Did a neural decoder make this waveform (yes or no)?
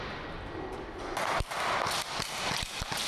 no